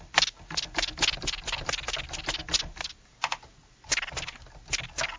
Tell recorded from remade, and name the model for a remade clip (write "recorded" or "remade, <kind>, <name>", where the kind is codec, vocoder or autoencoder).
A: recorded